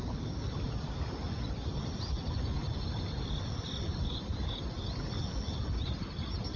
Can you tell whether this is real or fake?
real